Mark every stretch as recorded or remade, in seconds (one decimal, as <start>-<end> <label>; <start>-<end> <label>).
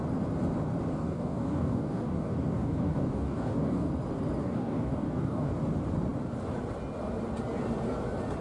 0.0-0.9 recorded; 0.9-3.9 remade; 3.9-4.4 recorded; 4.4-5.5 remade; 5.5-8.4 recorded